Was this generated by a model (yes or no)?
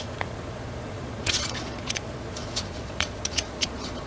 yes